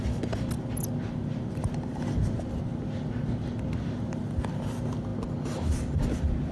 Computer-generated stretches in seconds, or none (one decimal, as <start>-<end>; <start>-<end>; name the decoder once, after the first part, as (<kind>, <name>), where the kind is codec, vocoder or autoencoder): none